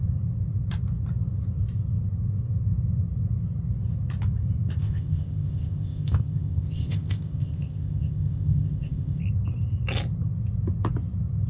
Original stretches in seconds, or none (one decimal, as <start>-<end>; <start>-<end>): 0.0-4.8; 9.2-11.5